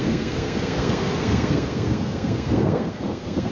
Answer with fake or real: fake